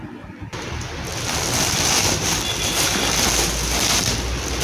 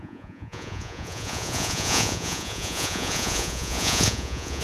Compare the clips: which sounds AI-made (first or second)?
second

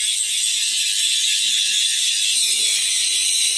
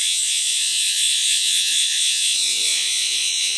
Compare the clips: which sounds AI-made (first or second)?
second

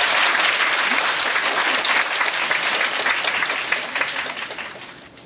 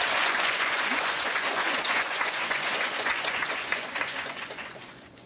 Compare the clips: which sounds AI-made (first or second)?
second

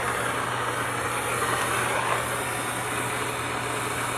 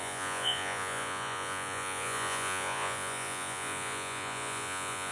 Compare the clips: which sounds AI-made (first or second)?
second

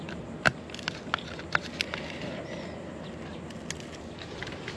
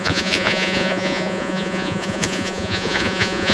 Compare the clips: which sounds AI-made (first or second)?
second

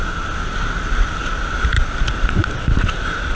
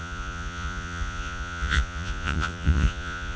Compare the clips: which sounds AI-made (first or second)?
second